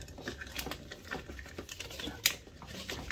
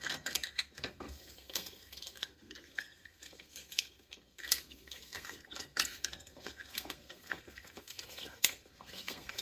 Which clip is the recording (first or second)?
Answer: first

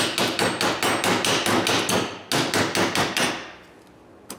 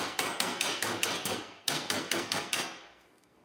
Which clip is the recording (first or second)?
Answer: first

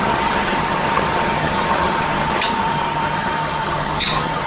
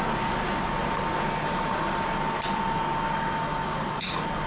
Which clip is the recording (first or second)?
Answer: second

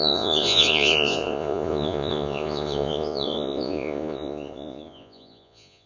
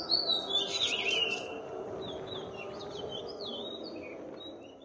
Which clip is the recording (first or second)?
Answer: second